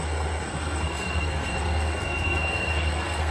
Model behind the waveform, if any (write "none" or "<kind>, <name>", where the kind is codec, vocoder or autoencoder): codec, SNAC